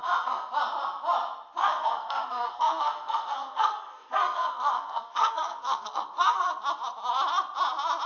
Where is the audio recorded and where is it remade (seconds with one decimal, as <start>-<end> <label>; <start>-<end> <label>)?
0.0-0.5 remade; 0.5-1.6 recorded; 1.6-6.5 remade; 6.5-8.1 recorded